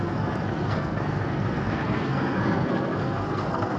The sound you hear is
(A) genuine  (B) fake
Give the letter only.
B